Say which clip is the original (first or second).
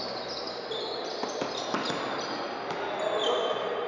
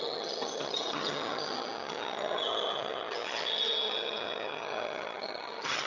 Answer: first